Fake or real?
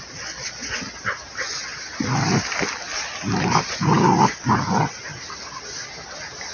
real